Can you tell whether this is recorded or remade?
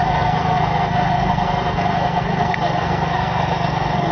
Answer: remade